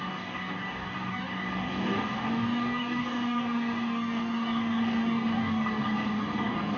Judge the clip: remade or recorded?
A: remade